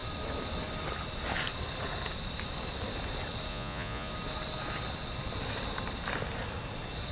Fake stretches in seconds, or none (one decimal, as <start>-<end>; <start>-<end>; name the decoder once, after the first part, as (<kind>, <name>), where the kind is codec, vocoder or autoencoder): 3.5-4.1 (vocoder, Vocos)

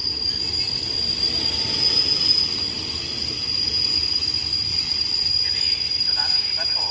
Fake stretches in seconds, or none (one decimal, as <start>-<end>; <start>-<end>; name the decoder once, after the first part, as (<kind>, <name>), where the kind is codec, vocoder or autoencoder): 4.7-5.3 (vocoder, Vocos)